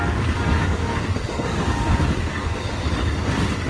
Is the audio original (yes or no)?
no